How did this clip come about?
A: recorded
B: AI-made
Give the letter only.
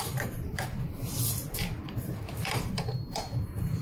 B